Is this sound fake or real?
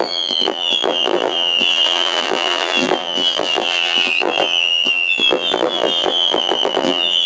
fake